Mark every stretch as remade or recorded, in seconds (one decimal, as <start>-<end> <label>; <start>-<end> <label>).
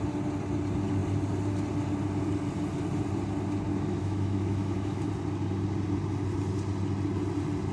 0.0-3.7 recorded; 3.7-5.1 remade; 5.1-7.7 recorded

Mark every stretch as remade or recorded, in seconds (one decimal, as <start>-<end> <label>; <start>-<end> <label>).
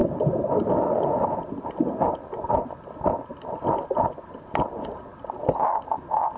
0.0-6.4 recorded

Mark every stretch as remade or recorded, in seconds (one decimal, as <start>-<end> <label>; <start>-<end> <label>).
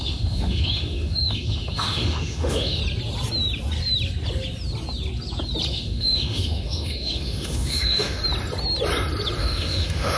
0.0-2.8 remade; 2.8-5.7 recorded; 5.7-8.2 remade; 8.2-9.4 recorded; 9.4-10.2 remade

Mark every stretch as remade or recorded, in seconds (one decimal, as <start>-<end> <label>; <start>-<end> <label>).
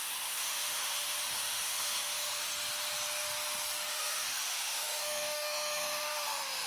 0.0-2.5 remade; 2.5-3.9 recorded; 3.9-6.7 remade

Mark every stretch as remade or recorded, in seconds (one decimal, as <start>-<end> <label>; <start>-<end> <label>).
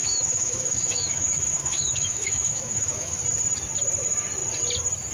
0.0-3.1 remade; 3.1-5.1 recorded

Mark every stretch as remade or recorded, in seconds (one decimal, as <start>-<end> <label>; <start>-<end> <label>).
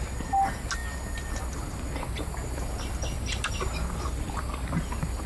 0.0-5.3 recorded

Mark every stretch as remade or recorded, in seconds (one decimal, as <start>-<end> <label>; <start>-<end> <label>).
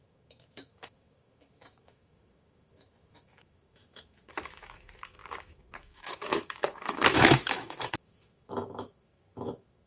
0.0-9.9 remade